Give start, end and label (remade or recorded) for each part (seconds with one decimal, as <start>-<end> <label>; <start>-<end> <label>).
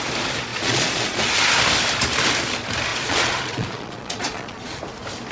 0.0-0.5 recorded; 0.5-1.2 remade; 1.2-2.9 recorded; 2.9-4.8 remade; 4.8-5.3 recorded